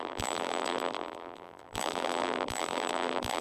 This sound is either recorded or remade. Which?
remade